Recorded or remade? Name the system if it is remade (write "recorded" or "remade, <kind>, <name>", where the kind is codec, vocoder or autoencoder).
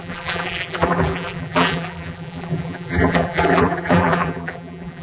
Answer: remade, vocoder, BigVGAN v2